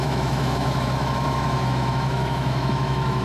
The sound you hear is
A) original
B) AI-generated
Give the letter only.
B